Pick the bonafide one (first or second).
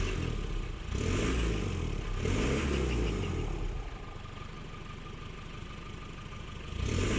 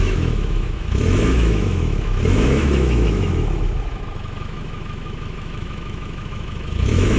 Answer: first